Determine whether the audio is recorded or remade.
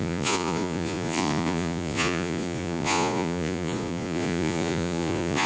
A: remade